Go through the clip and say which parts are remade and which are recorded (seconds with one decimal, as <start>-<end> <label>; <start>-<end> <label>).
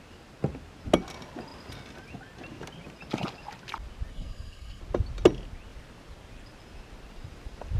0.0-4.1 recorded; 4.1-4.8 remade; 4.8-7.8 recorded